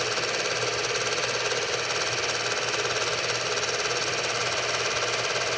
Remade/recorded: recorded